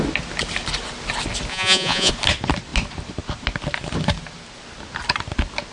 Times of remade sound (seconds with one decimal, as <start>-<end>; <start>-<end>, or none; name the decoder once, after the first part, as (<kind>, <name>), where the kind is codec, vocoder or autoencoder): 1.5-2.1 (vocoder, Vocos)